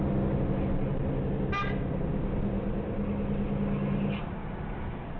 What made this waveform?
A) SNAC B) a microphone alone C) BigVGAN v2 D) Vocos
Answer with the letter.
B